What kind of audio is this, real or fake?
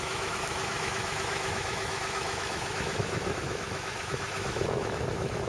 fake